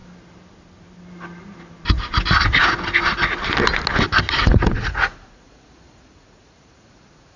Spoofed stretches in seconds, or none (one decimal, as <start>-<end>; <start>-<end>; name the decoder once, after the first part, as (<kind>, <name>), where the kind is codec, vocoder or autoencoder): 4.4-7.4 (vocoder, Vocos)